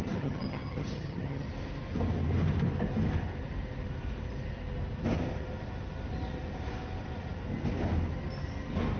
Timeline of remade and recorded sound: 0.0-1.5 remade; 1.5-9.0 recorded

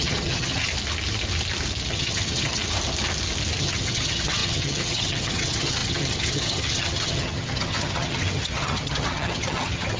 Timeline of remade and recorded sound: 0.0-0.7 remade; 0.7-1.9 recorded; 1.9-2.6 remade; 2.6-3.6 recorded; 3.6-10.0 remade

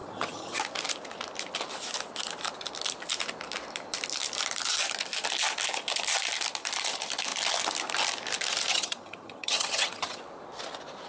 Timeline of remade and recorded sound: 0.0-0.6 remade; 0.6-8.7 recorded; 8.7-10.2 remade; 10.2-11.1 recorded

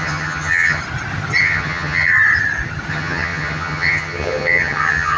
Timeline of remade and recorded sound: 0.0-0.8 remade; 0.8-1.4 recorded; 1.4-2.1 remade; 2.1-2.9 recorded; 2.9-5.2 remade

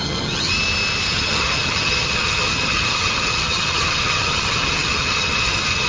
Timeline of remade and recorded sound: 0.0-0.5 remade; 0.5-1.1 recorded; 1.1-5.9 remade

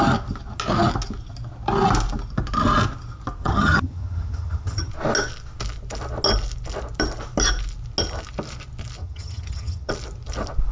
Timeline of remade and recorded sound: 0.0-3.4 recorded; 3.4-4.9 remade; 4.9-9.0 recorded; 9.0-9.9 remade; 9.9-10.7 recorded

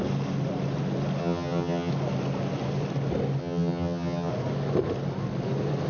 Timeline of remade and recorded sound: 0.0-1.2 recorded; 1.2-1.9 remade; 1.9-3.4 recorded; 3.4-4.3 remade; 4.3-5.9 recorded